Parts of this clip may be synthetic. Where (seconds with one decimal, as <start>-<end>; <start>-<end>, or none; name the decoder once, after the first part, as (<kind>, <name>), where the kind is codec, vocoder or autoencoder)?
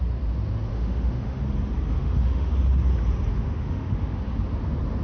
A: 0.7-1.4 (autoencoder, DAC-VAE); 2.0-2.5; 3.3-4.2